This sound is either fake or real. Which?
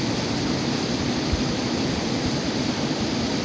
real